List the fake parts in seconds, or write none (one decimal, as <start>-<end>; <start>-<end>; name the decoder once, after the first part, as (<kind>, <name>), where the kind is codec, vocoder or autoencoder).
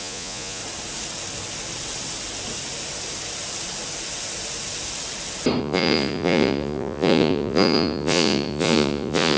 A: 0.0-0.6 (vocoder, Vocos); 5.6-9.4